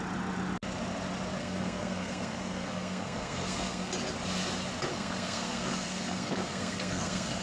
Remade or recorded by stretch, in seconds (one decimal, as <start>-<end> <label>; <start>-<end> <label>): 0.0-1.4 recorded; 1.4-3.9 remade; 3.9-4.9 recorded; 4.9-7.4 remade